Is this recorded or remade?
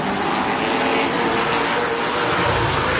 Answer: recorded